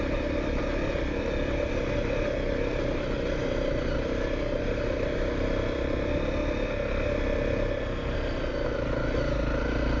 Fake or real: real